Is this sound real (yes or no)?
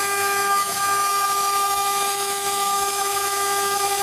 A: no